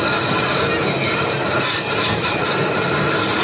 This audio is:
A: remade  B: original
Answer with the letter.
B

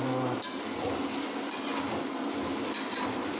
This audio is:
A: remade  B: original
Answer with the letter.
B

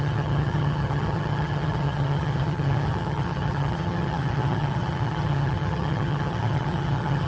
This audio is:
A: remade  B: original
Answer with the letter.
A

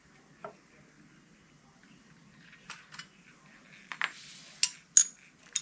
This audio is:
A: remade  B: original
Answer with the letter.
B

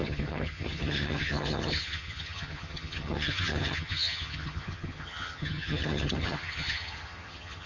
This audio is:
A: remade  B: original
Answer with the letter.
A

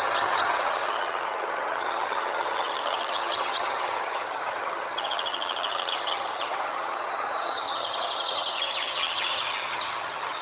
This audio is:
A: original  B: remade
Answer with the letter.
B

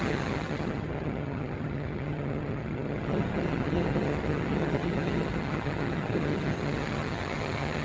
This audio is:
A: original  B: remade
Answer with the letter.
B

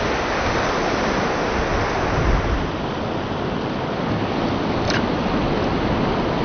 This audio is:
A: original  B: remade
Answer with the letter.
A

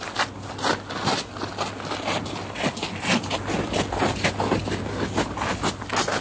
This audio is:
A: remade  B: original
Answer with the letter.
B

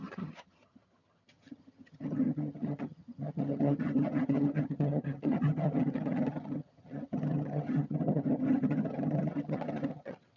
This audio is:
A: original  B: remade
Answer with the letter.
B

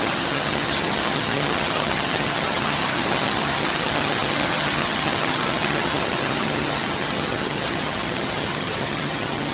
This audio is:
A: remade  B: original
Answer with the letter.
A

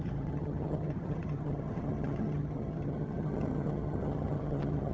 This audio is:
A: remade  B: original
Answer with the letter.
A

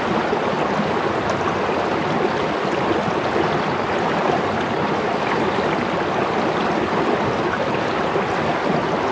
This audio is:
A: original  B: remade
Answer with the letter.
A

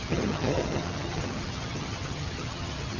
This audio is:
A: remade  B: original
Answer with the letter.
A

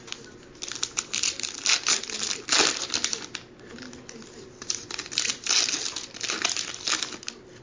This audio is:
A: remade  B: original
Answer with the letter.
B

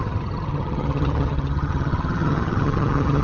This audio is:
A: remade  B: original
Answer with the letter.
A